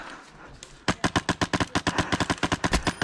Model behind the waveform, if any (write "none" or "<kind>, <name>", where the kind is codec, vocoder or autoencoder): none